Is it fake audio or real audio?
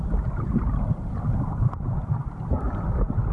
real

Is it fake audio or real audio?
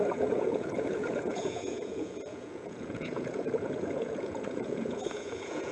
fake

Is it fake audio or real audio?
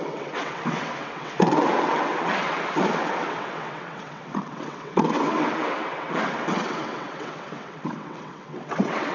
fake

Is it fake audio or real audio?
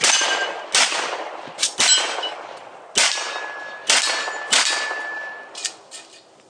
real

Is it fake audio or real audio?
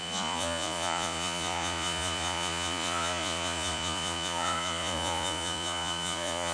fake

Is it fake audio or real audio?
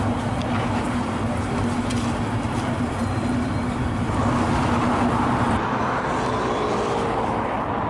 real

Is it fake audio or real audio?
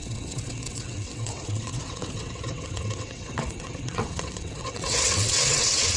fake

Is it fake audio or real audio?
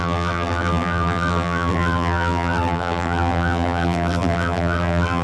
fake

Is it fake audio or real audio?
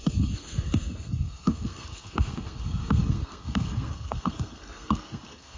fake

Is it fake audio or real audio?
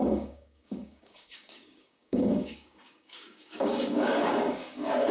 fake